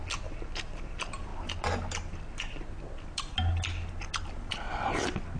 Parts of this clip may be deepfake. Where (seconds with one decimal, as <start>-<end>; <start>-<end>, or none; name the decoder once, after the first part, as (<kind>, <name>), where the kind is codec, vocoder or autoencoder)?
none